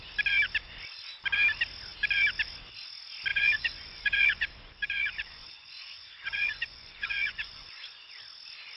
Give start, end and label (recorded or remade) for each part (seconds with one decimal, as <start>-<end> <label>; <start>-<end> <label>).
0.0-3.3 recorded; 3.3-8.1 remade; 8.1-8.8 recorded